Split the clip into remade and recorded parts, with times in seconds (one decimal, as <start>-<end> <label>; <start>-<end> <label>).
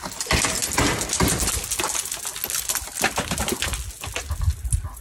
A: 0.0-5.0 recorded